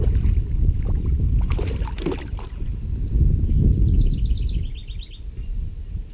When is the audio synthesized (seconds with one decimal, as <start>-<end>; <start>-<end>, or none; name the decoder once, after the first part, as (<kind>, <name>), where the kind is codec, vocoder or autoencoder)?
0.0-3.7 (vocoder, BigVGAN v2); 4.8-6.1